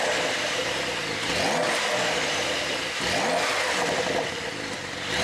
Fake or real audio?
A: real